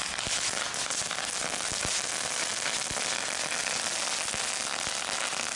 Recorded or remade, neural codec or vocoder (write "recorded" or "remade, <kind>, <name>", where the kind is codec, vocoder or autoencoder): recorded